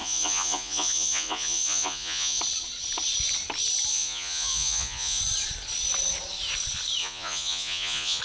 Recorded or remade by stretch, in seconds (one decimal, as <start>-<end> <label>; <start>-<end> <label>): 0.0-2.4 remade; 2.4-3.9 recorded; 3.9-5.2 remade; 5.2-7.0 recorded; 7.0-8.2 remade

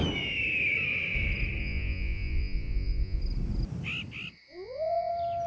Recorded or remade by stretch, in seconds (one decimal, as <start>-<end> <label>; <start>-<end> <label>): 0.0-1.6 recorded; 1.6-3.2 remade; 3.2-4.5 recorded; 4.5-5.1 remade; 5.1-5.5 recorded

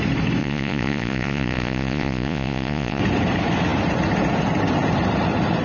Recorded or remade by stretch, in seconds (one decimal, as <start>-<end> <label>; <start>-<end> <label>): 0.0-0.4 recorded; 0.4-3.0 remade; 3.0-5.6 recorded

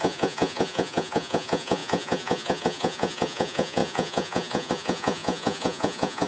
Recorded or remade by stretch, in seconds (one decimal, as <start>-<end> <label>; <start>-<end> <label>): 0.0-6.3 remade

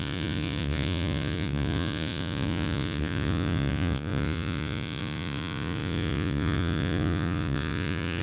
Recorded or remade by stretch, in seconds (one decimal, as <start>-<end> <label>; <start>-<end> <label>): 0.0-8.2 remade

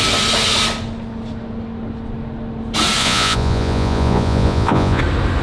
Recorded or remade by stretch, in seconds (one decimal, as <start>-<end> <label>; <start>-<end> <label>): 0.0-3.0 recorded; 3.0-5.0 remade; 5.0-5.4 recorded

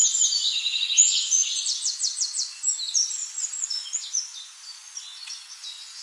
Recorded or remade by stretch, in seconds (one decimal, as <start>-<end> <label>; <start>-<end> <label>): 0.0-0.8 recorded; 0.8-6.0 remade

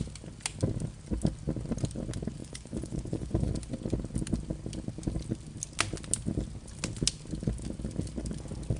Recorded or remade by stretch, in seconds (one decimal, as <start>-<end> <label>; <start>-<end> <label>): 0.0-2.4 recorded; 2.4-3.5 remade; 3.5-8.8 recorded